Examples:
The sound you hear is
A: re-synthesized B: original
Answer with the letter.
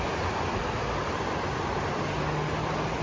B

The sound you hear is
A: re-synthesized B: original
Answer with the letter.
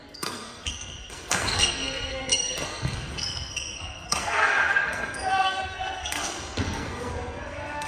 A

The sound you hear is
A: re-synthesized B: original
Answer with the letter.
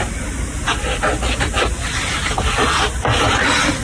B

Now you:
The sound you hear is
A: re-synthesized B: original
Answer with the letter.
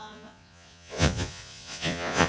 A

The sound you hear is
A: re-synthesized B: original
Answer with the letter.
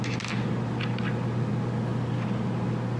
B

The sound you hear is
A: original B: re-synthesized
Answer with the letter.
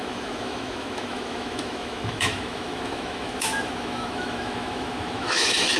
B